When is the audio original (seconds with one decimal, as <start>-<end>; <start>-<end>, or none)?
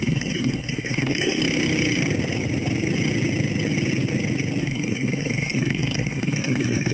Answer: 1.4-4.6